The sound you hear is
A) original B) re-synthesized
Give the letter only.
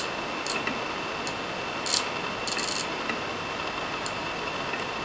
A